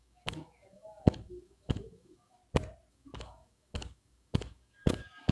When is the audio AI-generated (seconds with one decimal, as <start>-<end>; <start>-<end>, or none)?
0.0-2.4; 2.9-5.3